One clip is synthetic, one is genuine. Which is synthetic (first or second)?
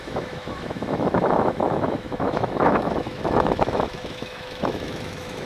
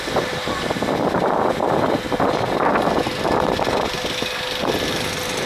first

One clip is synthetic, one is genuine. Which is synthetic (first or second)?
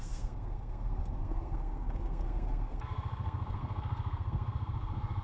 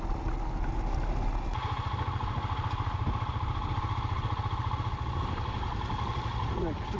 first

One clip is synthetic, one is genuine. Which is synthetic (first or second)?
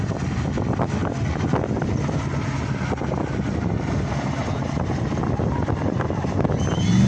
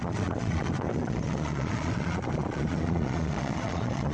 second